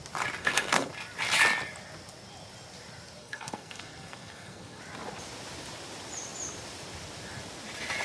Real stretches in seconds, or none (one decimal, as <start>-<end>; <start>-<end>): 0.0-0.4; 0.9-3.2; 4.8-8.0